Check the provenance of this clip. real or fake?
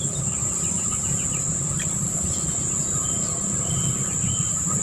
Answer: real